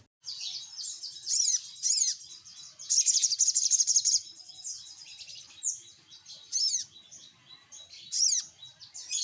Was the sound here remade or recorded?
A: recorded